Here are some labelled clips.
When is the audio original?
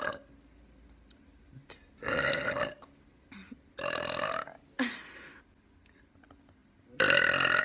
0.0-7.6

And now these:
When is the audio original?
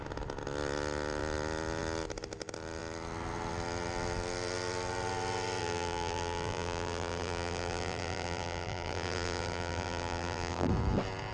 0.0-5.6; 10.7-11.3